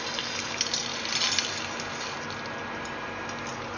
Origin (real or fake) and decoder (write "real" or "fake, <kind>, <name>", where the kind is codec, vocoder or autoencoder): real